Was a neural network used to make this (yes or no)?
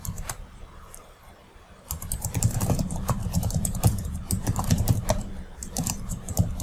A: yes